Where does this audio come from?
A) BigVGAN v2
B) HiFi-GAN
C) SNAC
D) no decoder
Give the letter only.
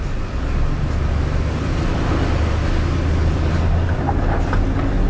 D